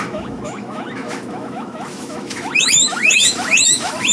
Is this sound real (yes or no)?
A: no